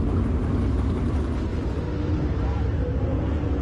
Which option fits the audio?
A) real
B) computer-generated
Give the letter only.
B